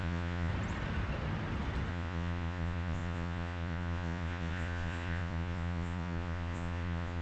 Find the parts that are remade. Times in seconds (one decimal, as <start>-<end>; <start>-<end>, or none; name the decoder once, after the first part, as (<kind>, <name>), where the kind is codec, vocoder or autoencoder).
0.0-0.5 (vocoder, Vocos); 1.9-7.2